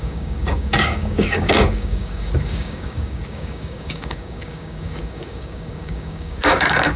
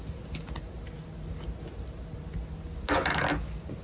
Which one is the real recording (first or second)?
second